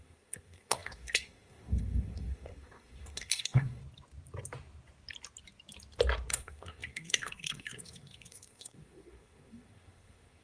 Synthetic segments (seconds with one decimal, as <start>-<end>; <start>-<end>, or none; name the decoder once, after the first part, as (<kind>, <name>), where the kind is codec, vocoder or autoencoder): 0.0-3.8 (codec, SNAC); 6.3-10.4